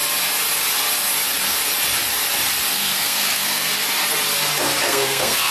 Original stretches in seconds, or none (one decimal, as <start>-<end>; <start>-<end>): 0.0-2.7; 3.7-4.8